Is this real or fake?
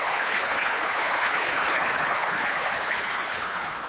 fake